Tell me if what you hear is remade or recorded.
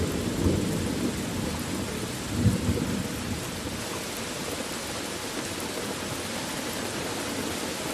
recorded